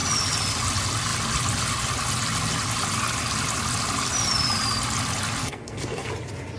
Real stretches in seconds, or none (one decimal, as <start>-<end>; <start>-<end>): 0.0-5.4; 6.1-6.6